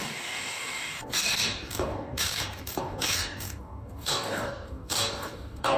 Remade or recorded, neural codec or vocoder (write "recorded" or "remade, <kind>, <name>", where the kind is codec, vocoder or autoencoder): remade, codec, DAC